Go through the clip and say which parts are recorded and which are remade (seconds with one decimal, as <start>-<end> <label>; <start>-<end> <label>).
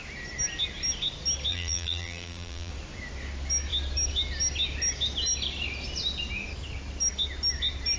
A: 0.0-1.5 recorded; 1.5-2.7 remade; 2.7-8.0 recorded